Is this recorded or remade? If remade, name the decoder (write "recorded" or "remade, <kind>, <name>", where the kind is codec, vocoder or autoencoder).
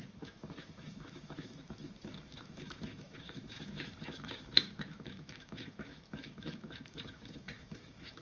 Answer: remade, autoencoder, DAC-VAE